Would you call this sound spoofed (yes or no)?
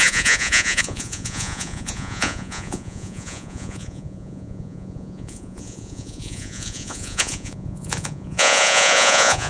yes